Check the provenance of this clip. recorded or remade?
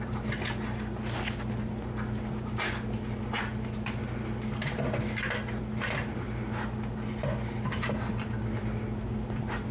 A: recorded